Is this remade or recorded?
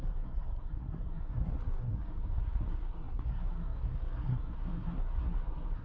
remade